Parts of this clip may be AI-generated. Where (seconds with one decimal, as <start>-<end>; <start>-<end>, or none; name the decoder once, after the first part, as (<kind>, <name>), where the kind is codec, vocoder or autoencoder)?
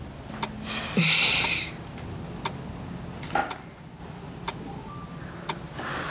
none